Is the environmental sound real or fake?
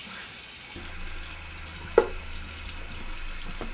real